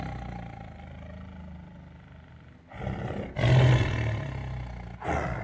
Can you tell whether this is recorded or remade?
recorded